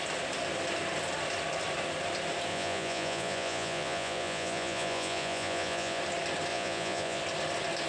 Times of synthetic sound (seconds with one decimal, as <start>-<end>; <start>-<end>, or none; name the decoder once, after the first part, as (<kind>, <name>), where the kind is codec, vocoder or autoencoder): 2.5-6.0 (vocoder, Vocos); 6.5-7.2